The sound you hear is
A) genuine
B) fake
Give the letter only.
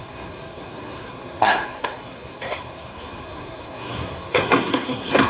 B